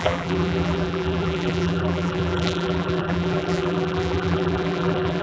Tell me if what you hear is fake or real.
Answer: fake